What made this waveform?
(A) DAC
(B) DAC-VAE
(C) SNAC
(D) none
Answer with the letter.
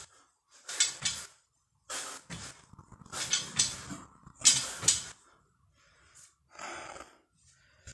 D